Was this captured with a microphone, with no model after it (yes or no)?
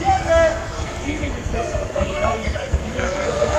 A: no